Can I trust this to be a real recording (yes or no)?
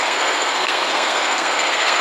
no